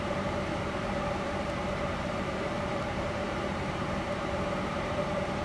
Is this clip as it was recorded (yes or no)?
no